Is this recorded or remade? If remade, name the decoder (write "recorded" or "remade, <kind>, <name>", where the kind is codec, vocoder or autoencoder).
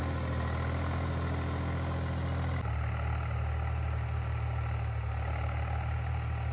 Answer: recorded